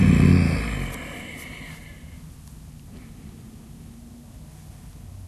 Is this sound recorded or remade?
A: recorded